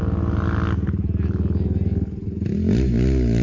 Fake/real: real